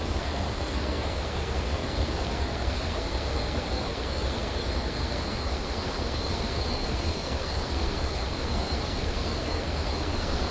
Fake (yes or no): yes